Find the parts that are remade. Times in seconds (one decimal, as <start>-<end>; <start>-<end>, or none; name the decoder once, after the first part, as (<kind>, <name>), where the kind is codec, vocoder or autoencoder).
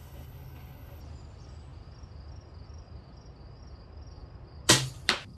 0.0-1.0 (codec, HILCodec)